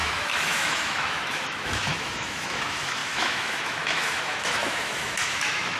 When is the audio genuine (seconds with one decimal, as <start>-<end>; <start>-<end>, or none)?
none

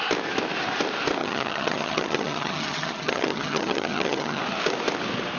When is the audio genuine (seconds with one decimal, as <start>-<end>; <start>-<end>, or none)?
0.0-1.2; 4.4-5.4

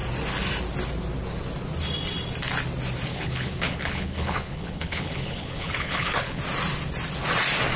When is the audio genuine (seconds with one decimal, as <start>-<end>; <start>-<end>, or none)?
0.0-3.1; 6.4-7.8

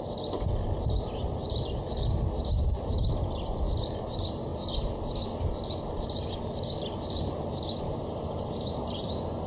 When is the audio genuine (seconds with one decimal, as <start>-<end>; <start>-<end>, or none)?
0.0-9.5